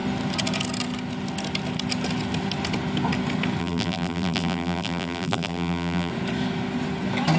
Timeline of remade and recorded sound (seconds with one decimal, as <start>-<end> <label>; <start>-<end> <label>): 0.0-3.6 recorded; 3.6-6.1 remade; 6.1-7.4 recorded